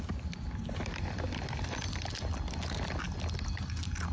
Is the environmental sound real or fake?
real